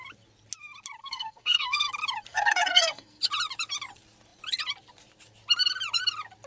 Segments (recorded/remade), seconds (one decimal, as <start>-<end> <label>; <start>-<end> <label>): 0.0-1.0 recorded; 1.0-1.9 remade; 1.9-2.3 recorded; 2.3-3.2 remade; 3.2-6.5 recorded